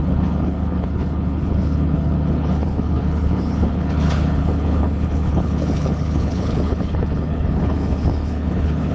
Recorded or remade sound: remade